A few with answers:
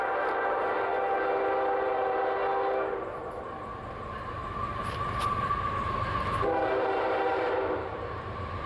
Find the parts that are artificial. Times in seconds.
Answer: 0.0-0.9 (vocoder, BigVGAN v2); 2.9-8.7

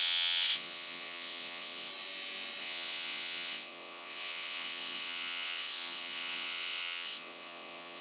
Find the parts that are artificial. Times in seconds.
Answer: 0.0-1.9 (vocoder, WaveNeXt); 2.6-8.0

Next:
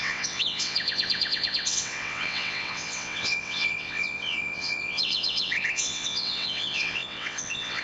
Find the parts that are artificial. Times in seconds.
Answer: 0.0-7.8 (vocoder, WaveNeXt)

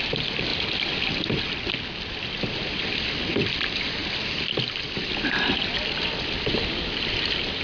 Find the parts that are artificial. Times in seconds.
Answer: none

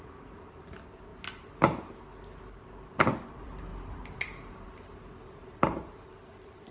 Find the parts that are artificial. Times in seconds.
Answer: 0.0-1.1 (vocoder, BigVGAN v2); 2.6-3.7; 4.5-5.6; 6.3-6.7

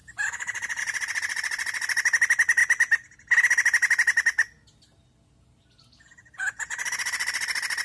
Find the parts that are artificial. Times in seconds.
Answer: none